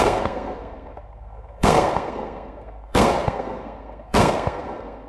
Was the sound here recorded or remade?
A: remade